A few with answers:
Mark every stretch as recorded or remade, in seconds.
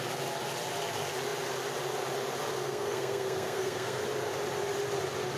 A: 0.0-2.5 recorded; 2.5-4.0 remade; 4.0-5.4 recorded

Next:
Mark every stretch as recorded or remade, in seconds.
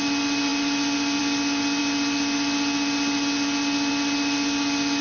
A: 0.0-5.0 recorded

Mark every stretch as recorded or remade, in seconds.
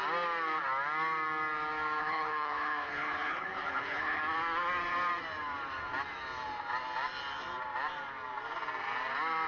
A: 0.0-2.0 recorded; 2.0-4.2 remade; 4.2-9.5 recorded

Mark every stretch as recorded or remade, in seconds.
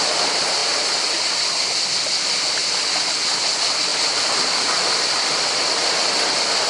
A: 0.0-6.7 recorded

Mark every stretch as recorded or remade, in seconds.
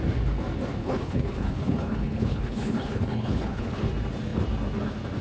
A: 0.0-0.8 recorded; 0.8-3.9 remade; 3.9-5.2 recorded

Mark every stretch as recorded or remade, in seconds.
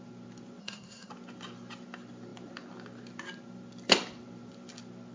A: 0.0-0.6 recorded; 0.6-1.1 remade; 1.1-5.1 recorded